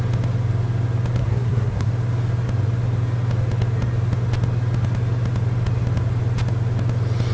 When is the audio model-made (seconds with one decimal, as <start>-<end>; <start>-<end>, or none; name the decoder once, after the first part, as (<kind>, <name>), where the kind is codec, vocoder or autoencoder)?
1.2-1.9 (codec, SNAC)